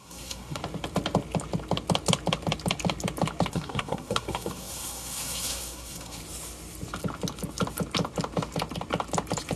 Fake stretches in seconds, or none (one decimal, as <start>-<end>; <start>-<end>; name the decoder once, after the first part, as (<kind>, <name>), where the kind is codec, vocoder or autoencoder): 0.0-0.6 (codec, SNAC); 3.5-6.2